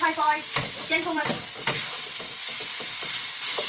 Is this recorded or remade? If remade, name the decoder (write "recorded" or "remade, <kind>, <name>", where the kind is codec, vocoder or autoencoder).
remade, vocoder, BigVGAN v2